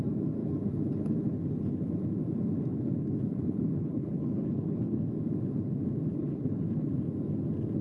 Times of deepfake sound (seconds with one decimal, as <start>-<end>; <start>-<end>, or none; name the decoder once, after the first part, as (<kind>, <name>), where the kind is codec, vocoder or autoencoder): 0.4-1.9 (codec, HILCodec); 2.7-5.0; 6.1-6.9